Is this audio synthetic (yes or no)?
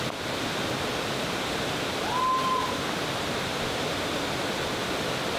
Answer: no